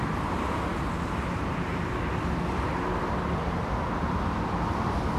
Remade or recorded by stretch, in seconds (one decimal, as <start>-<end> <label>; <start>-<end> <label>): 0.0-5.2 recorded